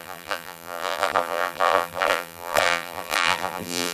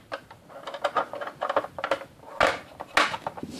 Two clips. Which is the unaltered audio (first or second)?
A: second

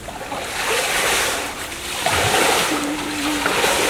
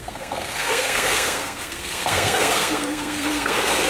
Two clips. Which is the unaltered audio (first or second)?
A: first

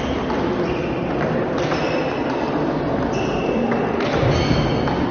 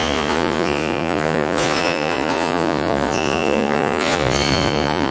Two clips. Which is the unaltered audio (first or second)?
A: first